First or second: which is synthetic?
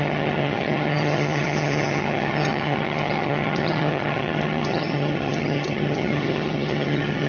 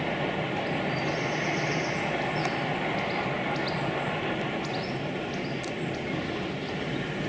first